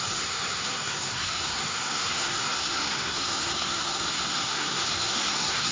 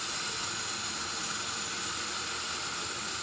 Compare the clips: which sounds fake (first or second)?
first